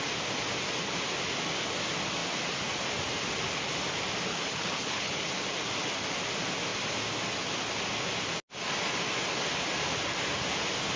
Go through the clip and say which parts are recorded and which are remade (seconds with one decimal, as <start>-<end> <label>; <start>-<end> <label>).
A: 0.0-4.3 recorded; 4.3-5.3 remade; 5.3-11.0 recorded